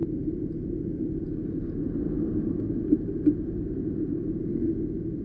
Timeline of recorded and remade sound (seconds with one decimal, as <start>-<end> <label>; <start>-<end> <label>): 0.0-2.6 remade; 2.6-3.4 recorded; 3.4-4.5 remade; 4.5-5.2 recorded